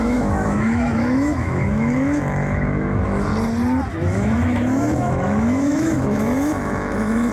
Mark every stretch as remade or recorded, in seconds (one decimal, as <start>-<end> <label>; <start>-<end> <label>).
0.0-3.3 remade; 3.3-3.9 recorded; 3.9-7.3 remade

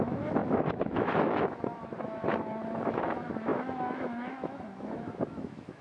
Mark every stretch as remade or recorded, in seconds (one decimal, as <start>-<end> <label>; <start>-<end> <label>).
0.0-5.8 remade

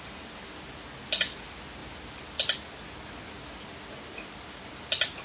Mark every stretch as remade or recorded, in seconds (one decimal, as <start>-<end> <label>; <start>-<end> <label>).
0.0-5.2 recorded

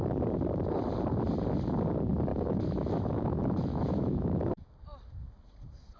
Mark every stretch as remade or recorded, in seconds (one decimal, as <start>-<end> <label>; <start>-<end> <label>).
0.0-2.3 recorded; 2.3-4.7 remade; 4.7-6.0 recorded